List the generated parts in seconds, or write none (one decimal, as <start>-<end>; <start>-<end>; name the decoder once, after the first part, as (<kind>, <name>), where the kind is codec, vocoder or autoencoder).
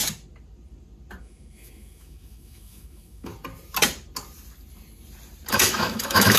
1.2-3.3 (autoencoder, DAC-VAE); 5.5-6.4